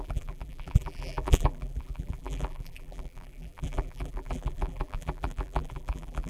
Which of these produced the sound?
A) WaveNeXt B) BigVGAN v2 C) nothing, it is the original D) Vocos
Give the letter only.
B